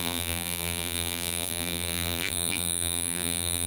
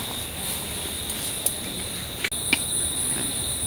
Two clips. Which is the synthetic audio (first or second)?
first